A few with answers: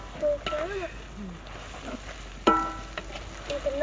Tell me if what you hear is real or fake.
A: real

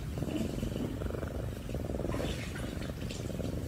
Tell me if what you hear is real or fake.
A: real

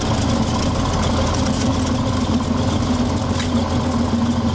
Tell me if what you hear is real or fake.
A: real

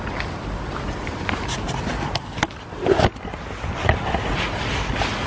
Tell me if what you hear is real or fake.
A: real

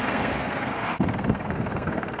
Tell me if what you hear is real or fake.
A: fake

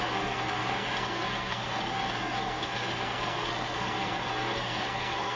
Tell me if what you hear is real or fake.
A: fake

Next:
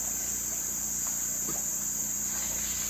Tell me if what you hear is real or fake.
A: real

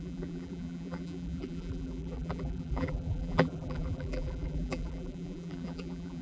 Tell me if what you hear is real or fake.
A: fake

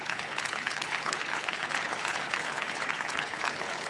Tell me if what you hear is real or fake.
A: fake